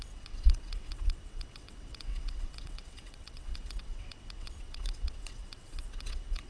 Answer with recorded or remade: remade